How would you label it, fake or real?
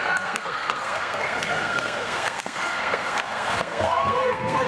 fake